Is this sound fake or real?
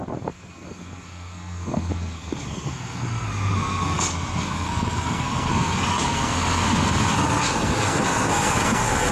fake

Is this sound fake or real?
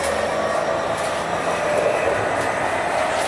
real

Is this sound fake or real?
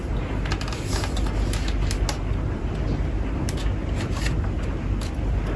real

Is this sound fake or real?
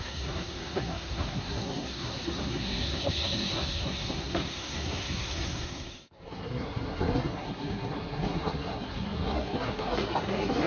fake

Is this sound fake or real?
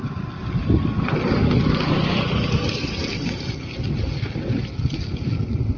real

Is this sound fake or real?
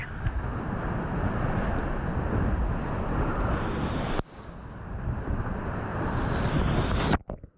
real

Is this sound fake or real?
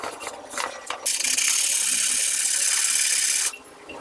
real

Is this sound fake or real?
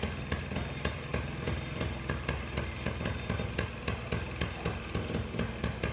real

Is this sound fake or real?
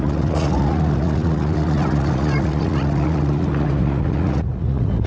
fake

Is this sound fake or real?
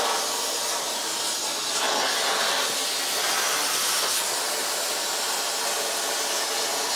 real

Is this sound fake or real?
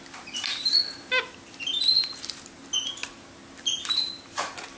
real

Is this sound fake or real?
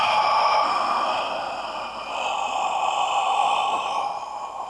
real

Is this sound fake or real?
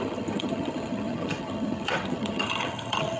fake